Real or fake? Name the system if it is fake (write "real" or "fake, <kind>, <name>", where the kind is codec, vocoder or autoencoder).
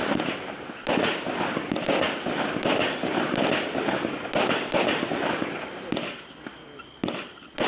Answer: real